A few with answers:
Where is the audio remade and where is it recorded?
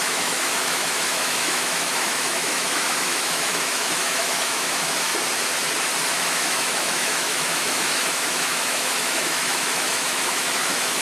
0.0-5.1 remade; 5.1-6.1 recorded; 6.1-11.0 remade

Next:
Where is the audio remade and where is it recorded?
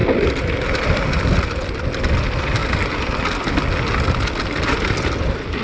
0.0-5.6 recorded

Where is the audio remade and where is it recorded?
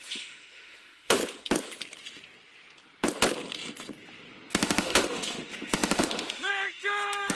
0.0-1.2 remade; 1.2-4.5 recorded; 4.5-7.3 remade